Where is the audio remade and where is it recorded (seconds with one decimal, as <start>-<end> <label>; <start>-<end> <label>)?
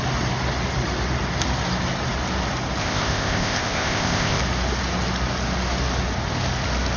0.0-2.8 recorded; 2.8-4.4 remade; 4.4-7.0 recorded